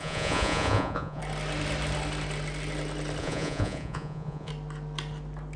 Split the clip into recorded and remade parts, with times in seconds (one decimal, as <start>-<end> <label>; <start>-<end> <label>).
0.0-1.2 remade; 1.2-3.2 recorded; 3.2-4.5 remade; 4.5-5.6 recorded